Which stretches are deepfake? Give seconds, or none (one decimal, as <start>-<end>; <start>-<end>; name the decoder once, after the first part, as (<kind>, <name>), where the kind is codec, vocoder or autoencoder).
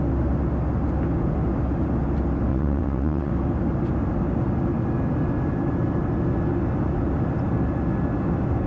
2.5-3.3 (vocoder, WaveNeXt)